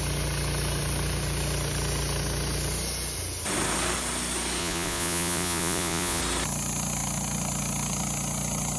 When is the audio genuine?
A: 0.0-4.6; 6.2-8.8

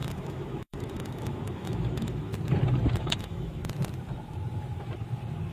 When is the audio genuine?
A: 2.3-3.0; 3.6-5.5